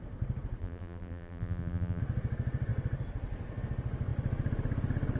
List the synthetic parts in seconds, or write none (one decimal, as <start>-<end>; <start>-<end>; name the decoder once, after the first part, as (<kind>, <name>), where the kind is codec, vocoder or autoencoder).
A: 0.6-2.0 (vocoder, BigVGAN v2)